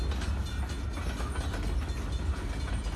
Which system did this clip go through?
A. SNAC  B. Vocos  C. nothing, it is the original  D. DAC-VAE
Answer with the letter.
C